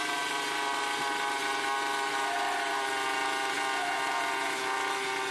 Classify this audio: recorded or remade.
recorded